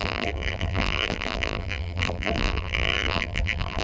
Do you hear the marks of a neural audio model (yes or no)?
yes